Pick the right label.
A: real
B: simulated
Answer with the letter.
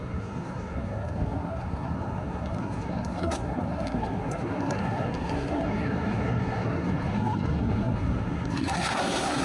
B